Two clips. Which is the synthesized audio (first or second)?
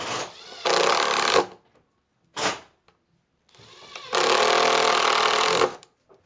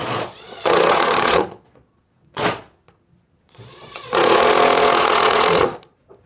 second